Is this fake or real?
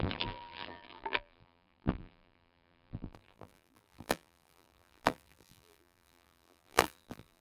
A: fake